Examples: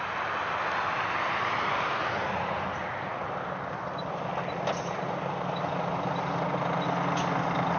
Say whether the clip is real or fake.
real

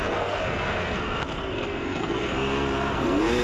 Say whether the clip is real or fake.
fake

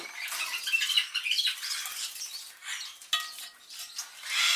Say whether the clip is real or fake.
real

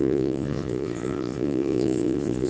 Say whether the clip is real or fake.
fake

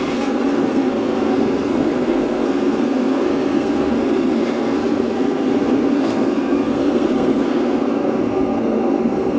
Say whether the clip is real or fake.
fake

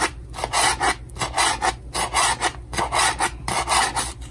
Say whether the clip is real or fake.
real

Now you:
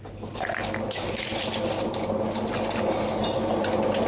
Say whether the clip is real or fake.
real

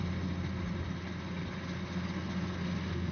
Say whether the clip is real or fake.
real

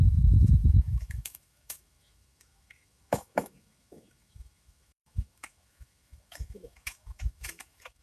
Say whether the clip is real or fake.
fake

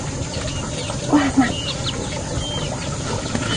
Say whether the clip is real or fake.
real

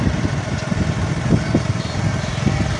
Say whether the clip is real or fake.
real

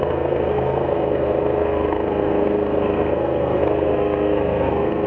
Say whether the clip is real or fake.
fake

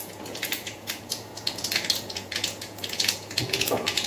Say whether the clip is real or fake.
fake